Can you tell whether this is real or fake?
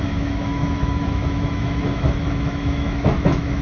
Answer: fake